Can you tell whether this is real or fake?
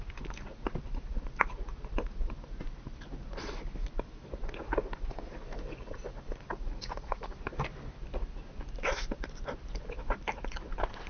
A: real